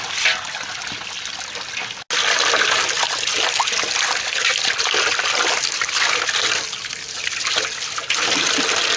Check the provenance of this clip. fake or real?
real